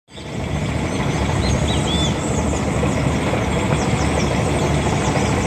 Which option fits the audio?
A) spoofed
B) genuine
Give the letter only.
B